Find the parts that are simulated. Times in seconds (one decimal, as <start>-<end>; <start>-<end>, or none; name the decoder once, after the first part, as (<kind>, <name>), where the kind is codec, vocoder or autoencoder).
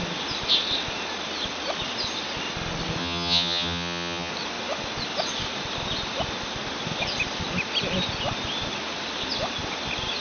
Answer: 3.0-4.3 (vocoder, HiFi-GAN)